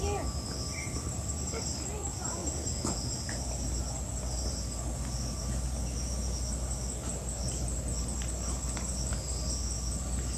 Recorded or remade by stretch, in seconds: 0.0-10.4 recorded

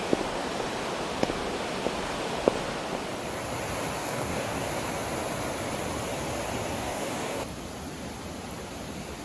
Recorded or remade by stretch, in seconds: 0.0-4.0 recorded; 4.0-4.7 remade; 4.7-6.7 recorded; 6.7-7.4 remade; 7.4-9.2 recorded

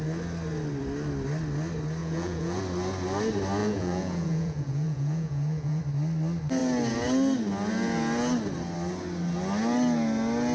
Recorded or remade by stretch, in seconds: 0.0-2.0 recorded; 2.0-2.6 remade; 2.6-3.6 recorded; 3.6-5.8 remade; 5.8-10.5 recorded